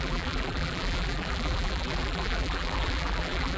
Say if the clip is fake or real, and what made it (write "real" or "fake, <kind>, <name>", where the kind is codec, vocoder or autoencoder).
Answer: fake, vocoder, BigVGAN v2